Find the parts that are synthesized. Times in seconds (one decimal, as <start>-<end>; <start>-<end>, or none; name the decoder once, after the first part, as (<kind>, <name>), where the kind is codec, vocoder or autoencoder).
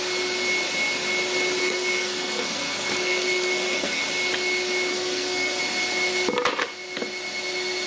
1.6-4.0 (codec, SNAC); 4.9-5.6